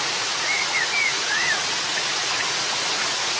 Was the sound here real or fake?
fake